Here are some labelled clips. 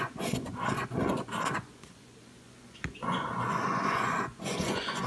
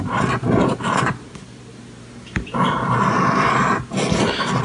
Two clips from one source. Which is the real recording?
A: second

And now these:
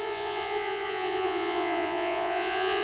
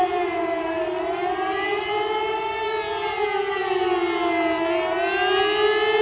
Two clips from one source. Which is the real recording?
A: second